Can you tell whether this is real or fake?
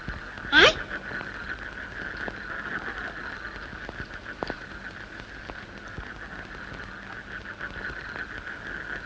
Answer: real